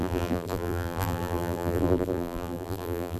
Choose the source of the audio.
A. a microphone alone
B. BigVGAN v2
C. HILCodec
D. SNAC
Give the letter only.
B